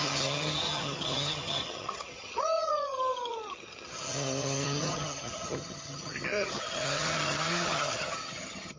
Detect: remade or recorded remade